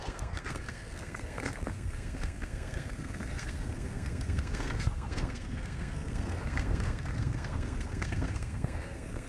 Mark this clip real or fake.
fake